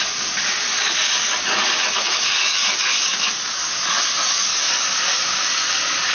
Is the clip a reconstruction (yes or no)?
yes